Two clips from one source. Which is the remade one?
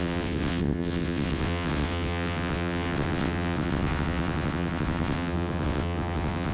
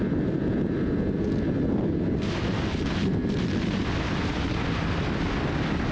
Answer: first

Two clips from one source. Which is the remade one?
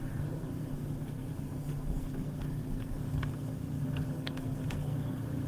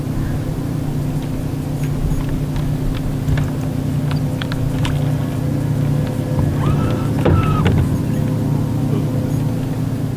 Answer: first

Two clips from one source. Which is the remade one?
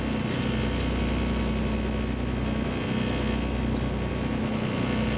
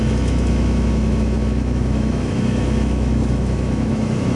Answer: second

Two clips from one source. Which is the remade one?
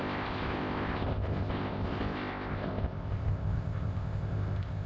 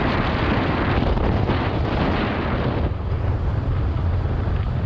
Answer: first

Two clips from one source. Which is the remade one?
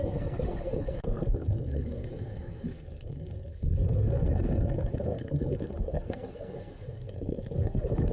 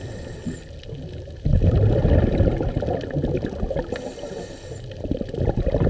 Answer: first